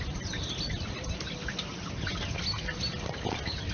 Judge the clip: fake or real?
real